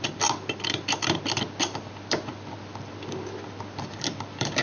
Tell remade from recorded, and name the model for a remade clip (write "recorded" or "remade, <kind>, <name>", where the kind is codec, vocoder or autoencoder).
remade, vocoder, BigVGAN v2